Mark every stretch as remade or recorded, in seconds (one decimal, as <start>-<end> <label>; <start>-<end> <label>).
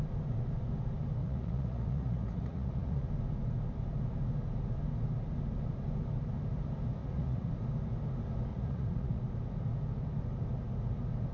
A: 0.0-1.2 recorded; 1.2-3.1 remade; 3.1-7.0 recorded; 7.0-7.5 remade; 7.5-8.5 recorded; 8.5-9.2 remade; 9.2-11.3 recorded